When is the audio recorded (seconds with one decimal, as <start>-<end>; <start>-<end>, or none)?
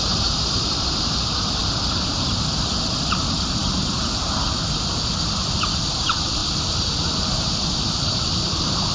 1.6-3.0